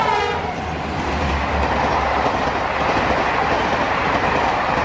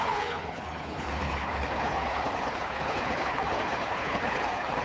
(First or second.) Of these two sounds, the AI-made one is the second